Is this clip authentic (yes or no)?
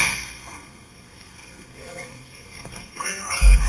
no